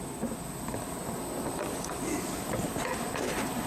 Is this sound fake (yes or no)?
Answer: no